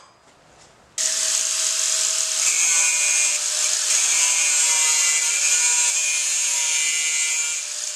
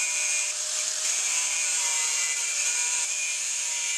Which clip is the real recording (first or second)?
first